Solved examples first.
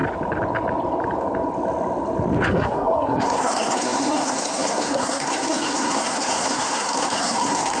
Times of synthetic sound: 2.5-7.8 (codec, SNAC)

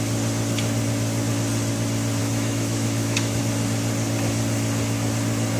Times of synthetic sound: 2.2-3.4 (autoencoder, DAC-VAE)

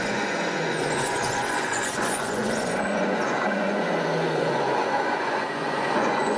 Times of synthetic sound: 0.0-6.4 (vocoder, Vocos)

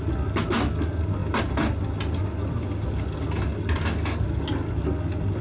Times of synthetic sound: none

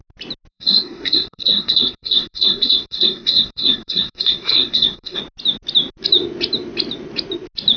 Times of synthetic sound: 0.5-5.2 (codec, SNAC)